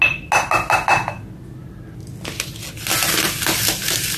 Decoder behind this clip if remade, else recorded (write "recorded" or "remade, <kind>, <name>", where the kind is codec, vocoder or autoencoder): recorded